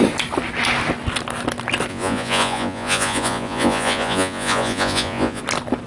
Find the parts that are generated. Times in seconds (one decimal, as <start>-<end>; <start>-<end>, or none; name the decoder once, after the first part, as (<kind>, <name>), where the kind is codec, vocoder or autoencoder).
1.9-5.4 (vocoder, Vocos)